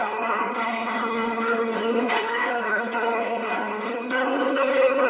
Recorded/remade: remade